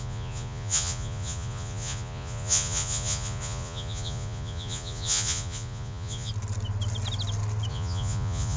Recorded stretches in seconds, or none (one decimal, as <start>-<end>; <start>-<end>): 6.3-7.7